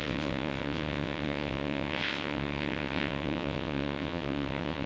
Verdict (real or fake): fake